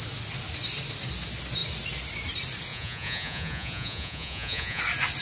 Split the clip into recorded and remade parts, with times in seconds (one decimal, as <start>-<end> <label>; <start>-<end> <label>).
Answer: 0.0-2.7 recorded; 2.7-4.8 remade; 4.8-5.2 recorded